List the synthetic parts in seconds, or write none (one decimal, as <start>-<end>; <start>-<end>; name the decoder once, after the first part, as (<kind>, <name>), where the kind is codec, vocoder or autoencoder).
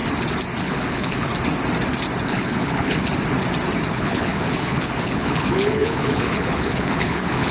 0.6-1.3 (codec, HILCodec); 2.2-3.1; 3.9-7.5